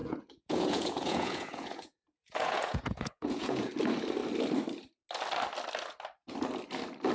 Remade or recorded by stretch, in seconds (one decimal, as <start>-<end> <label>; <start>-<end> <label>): 0.0-3.7 remade; 3.7-7.1 recorded